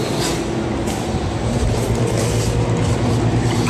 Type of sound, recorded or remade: recorded